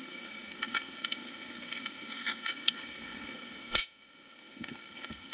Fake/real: fake